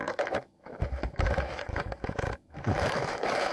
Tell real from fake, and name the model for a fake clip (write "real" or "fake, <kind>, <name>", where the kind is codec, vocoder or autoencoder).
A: fake, autoencoder, DAC-VAE